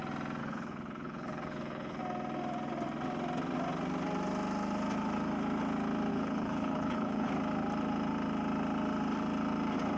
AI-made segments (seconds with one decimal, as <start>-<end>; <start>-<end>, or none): 0.4-2.0; 6.1-7.3